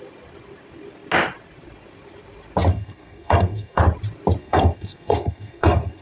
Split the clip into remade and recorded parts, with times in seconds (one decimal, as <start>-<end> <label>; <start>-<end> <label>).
0.0-2.7 recorded; 2.7-3.8 remade; 3.8-4.4 recorded; 4.4-6.0 remade